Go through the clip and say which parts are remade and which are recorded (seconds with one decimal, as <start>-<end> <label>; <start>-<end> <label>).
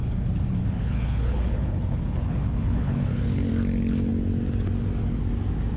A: 0.0-3.5 remade; 3.5-5.8 recorded